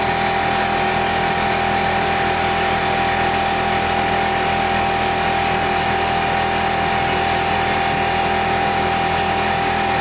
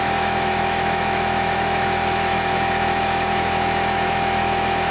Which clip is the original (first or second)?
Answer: first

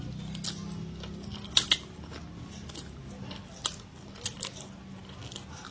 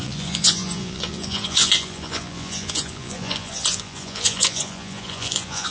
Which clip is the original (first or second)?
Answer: first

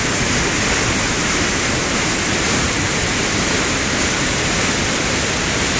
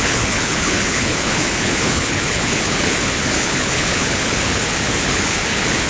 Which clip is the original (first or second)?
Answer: first